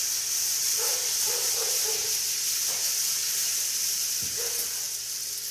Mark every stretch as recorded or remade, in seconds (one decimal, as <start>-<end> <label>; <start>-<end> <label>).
0.0-2.0 recorded; 2.0-4.4 remade; 4.4-5.5 recorded